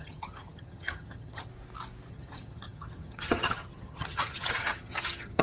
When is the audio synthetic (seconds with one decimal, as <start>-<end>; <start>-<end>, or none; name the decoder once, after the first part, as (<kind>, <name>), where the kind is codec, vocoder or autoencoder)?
0.0-1.5 (vocoder, HiFi-GAN); 2.1-5.4